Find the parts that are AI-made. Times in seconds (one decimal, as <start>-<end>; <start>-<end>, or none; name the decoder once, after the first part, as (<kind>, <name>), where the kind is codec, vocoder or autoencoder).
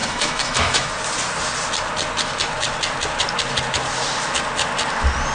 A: 0.0-0.9 (autoencoder, DAC-VAE)